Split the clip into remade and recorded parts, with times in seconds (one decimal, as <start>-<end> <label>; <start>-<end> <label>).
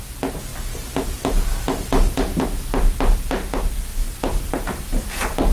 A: 0.0-3.9 recorded; 3.9-4.5 remade; 4.5-5.5 recorded